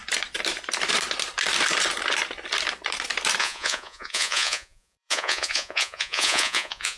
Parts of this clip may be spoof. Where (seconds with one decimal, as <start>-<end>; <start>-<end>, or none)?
3.4-7.0